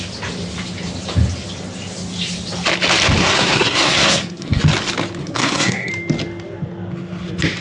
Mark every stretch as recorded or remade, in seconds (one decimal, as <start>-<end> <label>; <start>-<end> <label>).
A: 0.0-3.2 recorded; 3.2-4.6 remade; 4.6-5.2 recorded; 5.2-5.9 remade; 5.9-7.6 recorded